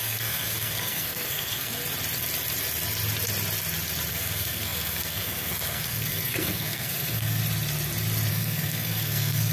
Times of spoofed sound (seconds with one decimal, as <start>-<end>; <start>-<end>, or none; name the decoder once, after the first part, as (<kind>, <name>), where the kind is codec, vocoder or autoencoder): 0.0-1.8 (codec, SNAC); 4.1-7.4; 8.3-9.5